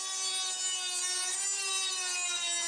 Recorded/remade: recorded